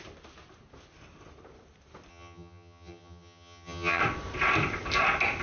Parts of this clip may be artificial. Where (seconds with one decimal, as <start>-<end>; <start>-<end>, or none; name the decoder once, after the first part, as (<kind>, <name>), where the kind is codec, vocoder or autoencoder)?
2.1-4.0 (vocoder, HiFi-GAN)